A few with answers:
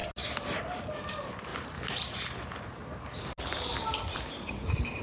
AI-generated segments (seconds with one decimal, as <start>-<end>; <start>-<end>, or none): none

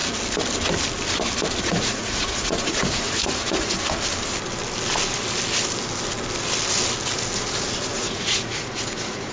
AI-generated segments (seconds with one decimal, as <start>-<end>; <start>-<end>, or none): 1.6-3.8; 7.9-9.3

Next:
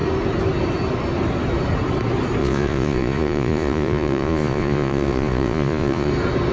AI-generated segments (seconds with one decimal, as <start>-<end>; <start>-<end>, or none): 2.4-6.1

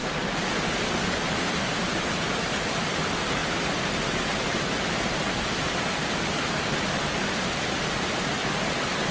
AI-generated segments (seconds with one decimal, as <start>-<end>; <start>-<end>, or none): none